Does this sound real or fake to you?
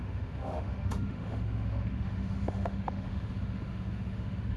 fake